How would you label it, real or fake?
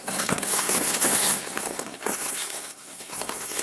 fake